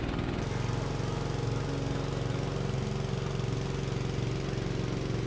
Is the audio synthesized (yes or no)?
no